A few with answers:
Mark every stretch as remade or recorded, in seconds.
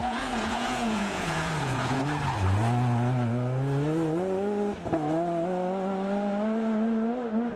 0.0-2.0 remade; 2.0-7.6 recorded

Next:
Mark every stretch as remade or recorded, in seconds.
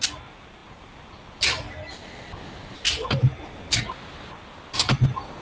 0.0-5.4 recorded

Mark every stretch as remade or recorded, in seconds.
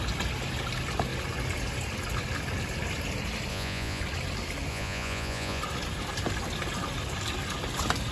0.0-3.5 recorded; 3.5-4.0 remade; 4.0-4.7 recorded; 4.7-5.6 remade; 5.6-8.1 recorded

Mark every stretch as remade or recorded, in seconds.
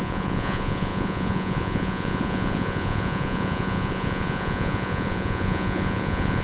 0.0-6.4 remade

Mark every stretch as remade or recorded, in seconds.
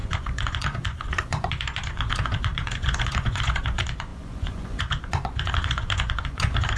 0.0-6.8 remade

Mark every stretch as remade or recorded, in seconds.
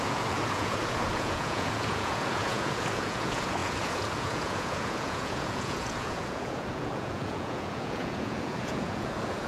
0.0-9.5 remade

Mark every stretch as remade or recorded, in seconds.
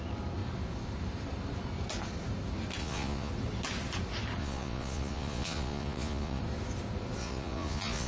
0.0-2.8 recorded; 2.8-3.3 remade; 3.3-4.4 recorded; 4.4-6.4 remade; 6.4-7.2 recorded; 7.2-8.1 remade